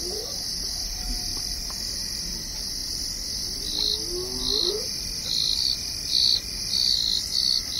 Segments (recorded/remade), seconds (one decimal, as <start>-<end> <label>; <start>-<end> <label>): 0.0-7.8 recorded